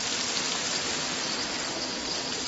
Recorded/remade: recorded